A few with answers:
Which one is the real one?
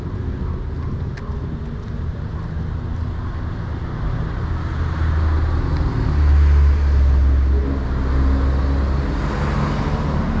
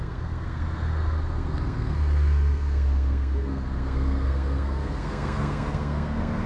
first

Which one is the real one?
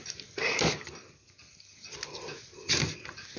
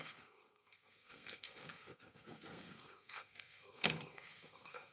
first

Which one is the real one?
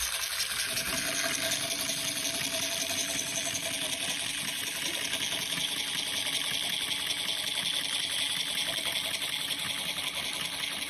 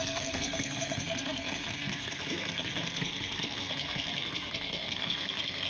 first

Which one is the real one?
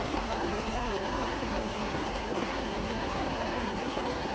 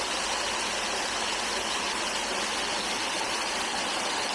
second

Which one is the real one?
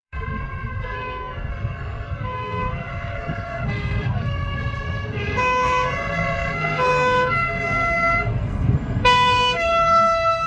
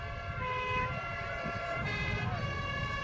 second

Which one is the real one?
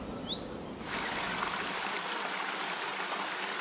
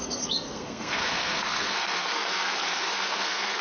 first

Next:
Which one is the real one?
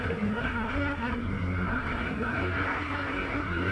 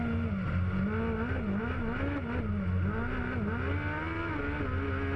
second